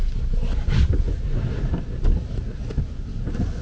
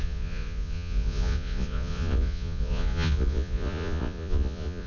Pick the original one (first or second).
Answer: first